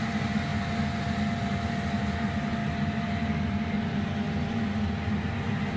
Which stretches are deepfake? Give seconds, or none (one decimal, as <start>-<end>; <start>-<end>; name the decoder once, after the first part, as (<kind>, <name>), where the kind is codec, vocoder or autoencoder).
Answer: none